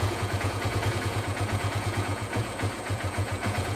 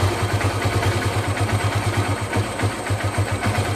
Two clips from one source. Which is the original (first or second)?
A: second